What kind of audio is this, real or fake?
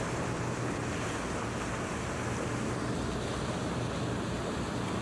real